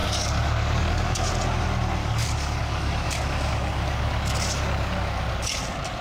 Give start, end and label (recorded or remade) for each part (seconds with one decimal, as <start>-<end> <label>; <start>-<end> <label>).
0.0-1.3 remade; 1.3-2.0 recorded; 2.0-5.6 remade; 5.6-6.0 recorded